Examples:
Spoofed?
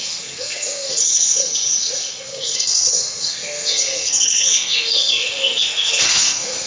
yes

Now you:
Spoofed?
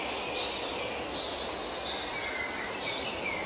no